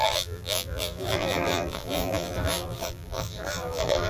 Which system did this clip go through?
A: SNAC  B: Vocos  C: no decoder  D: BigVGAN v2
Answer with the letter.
D